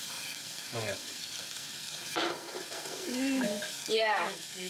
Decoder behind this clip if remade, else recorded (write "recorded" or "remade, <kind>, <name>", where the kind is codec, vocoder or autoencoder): remade, codec, SNAC